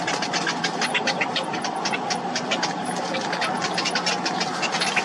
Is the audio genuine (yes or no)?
yes